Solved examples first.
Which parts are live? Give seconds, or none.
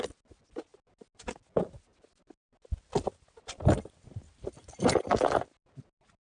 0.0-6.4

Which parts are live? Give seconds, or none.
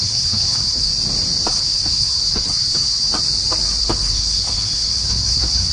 0.9-1.5; 3.1-3.8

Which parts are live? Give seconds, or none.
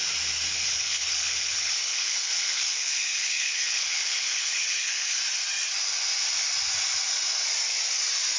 0.0-0.5; 5.2-8.4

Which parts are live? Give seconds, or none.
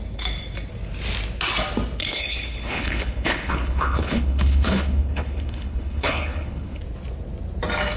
0.0-2.0; 6.8-8.0